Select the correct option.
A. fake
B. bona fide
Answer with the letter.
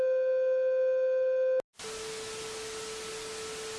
B